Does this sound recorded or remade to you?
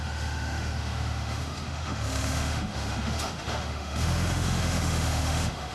remade